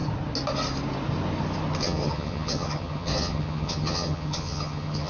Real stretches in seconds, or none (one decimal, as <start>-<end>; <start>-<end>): 0.0-1.8